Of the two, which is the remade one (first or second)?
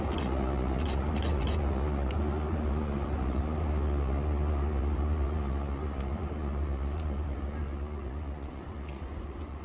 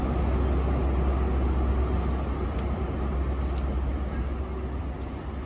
first